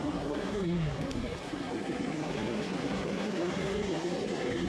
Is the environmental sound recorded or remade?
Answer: remade